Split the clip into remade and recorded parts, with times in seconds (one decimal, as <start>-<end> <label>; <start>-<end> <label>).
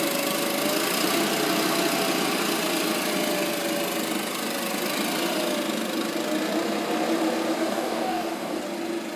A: 0.0-7.6 recorded; 7.6-8.6 remade; 8.6-9.2 recorded